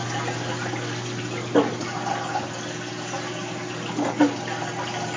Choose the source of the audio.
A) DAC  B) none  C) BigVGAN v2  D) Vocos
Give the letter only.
B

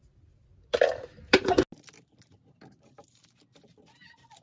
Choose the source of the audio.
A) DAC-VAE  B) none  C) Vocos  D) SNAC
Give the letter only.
B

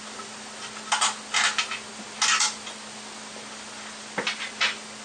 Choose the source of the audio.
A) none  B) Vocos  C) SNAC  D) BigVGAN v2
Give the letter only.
A